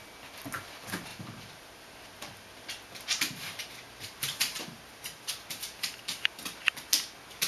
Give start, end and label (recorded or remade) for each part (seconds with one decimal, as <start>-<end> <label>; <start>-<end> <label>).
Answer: 0.0-1.1 recorded; 1.1-1.9 remade; 1.9-3.5 recorded; 3.5-6.0 remade; 6.0-7.5 recorded